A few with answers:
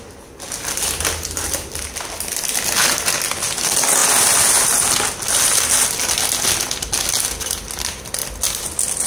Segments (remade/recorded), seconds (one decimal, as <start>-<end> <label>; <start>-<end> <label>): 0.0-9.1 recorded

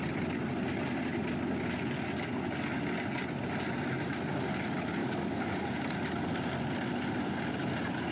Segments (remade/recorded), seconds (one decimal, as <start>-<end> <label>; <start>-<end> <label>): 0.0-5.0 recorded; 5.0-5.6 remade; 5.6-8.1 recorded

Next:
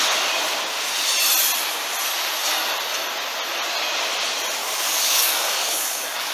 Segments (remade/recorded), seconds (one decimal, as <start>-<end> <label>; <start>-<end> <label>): 0.0-4.6 recorded; 4.6-6.3 remade

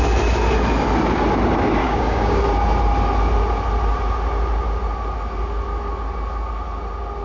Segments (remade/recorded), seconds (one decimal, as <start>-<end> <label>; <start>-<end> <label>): 0.0-1.8 recorded; 1.8-2.4 remade; 2.4-7.2 recorded

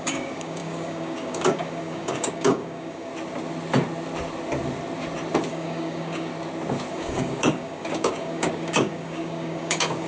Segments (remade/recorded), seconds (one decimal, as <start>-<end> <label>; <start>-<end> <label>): 0.0-3.1 remade; 3.1-5.5 recorded; 5.5-6.3 remade; 6.3-6.9 recorded; 6.9-10.1 remade